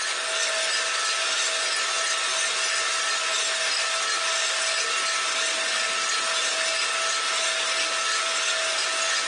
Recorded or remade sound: recorded